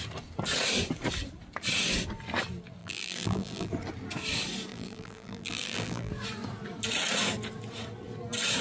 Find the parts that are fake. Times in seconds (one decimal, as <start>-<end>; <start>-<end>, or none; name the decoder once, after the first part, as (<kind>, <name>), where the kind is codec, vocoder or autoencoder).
2.8-3.7 (vocoder, BigVGAN v2); 4.7-6.1